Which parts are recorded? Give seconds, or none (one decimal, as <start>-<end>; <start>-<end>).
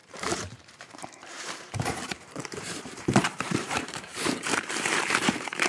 none